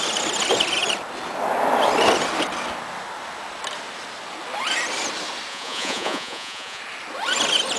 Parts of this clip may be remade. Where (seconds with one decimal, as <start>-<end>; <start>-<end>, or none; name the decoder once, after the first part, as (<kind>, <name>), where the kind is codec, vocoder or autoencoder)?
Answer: 5.5-6.8 (vocoder, Vocos)